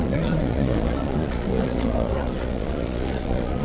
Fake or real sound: fake